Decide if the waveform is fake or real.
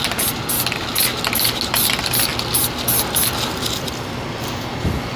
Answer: real